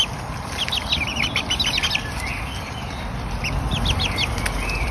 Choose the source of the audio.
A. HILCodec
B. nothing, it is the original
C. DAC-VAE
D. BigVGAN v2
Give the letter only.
B